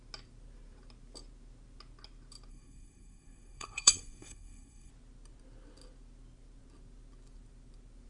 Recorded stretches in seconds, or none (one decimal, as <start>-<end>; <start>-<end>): 0.0-2.5; 4.9-8.1